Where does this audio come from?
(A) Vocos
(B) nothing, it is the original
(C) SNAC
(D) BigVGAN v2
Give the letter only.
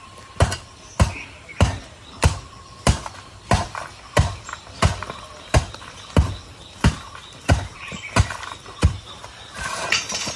D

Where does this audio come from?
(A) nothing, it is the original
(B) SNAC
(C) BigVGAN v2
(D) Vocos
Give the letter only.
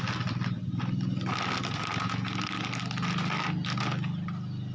A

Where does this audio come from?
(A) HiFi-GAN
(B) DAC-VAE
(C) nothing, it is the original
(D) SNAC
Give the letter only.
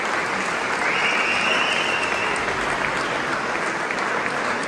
C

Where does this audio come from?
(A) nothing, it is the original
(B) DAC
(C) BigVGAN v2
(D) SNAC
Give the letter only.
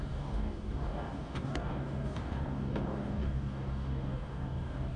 B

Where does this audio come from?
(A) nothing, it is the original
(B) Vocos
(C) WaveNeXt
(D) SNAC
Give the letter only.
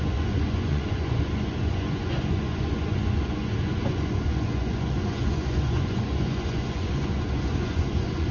B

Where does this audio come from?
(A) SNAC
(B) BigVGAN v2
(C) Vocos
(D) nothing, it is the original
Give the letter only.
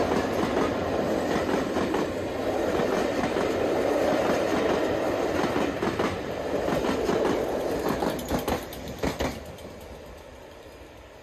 D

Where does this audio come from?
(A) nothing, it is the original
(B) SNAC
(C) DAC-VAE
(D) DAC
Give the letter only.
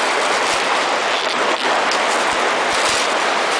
A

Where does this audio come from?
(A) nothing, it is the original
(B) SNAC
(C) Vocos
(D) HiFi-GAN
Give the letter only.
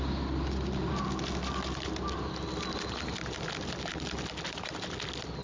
A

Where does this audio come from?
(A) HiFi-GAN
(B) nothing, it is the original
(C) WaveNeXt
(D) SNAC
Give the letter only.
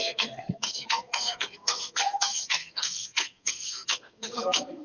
D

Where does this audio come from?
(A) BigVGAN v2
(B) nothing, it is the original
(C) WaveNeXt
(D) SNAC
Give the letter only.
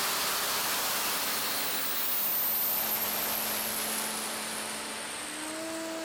B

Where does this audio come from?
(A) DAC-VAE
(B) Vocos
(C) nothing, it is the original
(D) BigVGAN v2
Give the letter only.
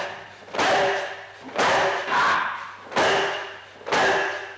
C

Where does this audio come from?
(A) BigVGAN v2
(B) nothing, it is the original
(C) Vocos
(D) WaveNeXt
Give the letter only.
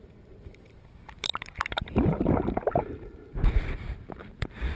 A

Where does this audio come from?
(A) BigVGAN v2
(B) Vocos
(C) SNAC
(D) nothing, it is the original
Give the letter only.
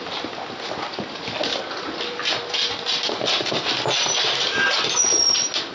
D